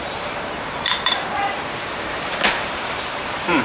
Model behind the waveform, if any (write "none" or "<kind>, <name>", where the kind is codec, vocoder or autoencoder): vocoder, BigVGAN v2